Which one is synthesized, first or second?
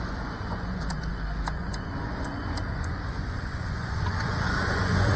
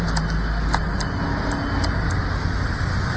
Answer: first